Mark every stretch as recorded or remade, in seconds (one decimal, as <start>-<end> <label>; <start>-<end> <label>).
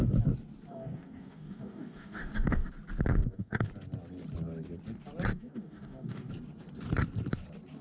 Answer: 0.0-0.7 recorded; 0.7-2.7 remade; 2.7-3.1 recorded; 3.1-3.7 remade; 3.7-5.3 recorded; 5.3-6.3 remade; 6.3-7.8 recorded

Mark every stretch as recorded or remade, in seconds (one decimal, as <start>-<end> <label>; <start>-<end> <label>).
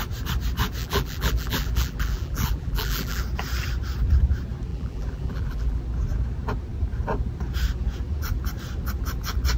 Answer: 0.0-0.8 recorded; 0.8-3.2 remade; 3.2-4.7 recorded; 4.7-5.8 remade; 5.8-9.6 recorded